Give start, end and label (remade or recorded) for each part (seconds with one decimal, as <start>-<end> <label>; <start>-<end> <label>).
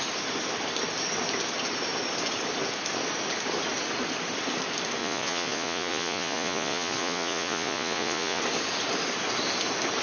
0.0-5.0 recorded; 5.0-8.4 remade; 8.4-10.0 recorded